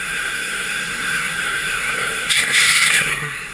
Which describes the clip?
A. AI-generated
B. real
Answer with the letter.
A